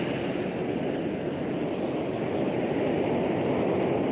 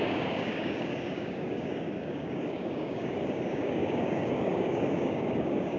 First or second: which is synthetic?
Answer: second